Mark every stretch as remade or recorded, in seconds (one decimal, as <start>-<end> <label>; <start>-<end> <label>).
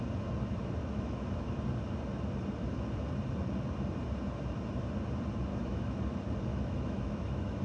0.0-0.8 recorded; 0.8-1.5 remade; 1.5-5.5 recorded; 5.5-6.0 remade; 6.0-6.5 recorded; 6.5-7.6 remade